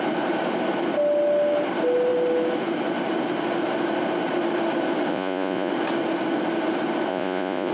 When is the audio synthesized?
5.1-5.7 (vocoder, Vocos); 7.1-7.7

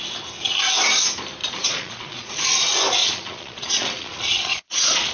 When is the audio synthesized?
1.4-2.3 (vocoder, Vocos); 3.0-5.1

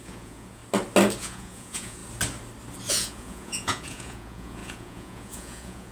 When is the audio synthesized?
0.0-0.6 (vocoder, Vocos); 1.2-2.0; 2.9-5.9

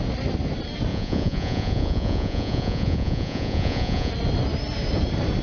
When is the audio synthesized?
0.9-4.1 (vocoder, Vocos)

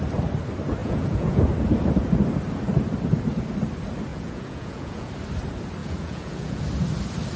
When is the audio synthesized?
0.8-1.4 (vocoder, Vocos); 4.1-5.1; 5.8-6.6